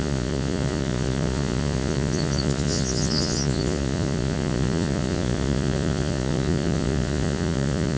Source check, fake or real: fake